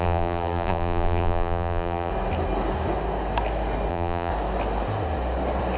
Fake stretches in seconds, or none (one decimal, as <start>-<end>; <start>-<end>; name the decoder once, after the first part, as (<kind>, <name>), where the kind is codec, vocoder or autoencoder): 0.0-2.1 (vocoder, BigVGAN v2); 3.9-4.3